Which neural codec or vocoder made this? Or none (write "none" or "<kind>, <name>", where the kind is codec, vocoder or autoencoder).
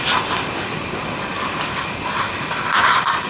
none